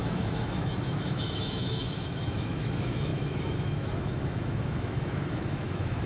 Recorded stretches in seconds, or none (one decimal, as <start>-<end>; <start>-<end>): none